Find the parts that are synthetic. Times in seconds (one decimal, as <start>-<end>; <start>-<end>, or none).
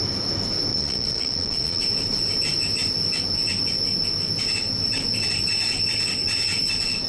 0.7-1.8